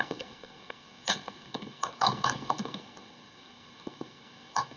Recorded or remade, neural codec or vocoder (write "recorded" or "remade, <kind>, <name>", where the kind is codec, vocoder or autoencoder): remade, codec, SNAC